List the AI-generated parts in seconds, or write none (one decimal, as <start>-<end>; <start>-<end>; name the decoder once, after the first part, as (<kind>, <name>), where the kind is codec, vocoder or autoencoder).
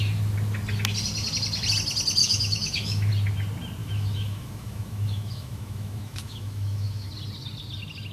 2.2-3.1 (autoencoder, DAC-VAE); 3.8-7.1